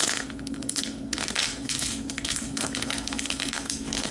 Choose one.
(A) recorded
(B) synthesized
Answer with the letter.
B